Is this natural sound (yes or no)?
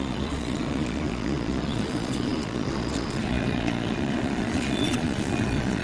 no